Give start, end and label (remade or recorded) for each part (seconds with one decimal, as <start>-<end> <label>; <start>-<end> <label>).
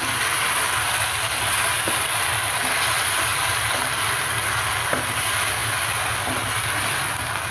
0.0-3.3 recorded; 3.3-4.6 remade; 4.6-7.5 recorded